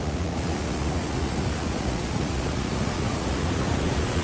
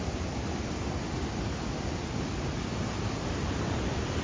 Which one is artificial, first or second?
first